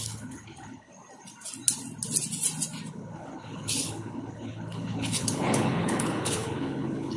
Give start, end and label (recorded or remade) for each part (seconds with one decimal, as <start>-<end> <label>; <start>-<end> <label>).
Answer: 0.0-0.9 remade; 0.9-2.9 recorded; 2.9-7.2 remade